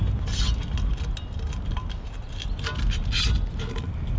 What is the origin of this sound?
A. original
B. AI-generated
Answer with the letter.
A